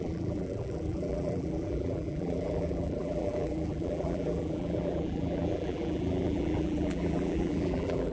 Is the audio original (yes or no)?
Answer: no